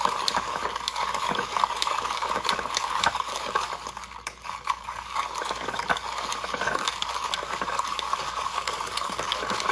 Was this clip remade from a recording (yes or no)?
yes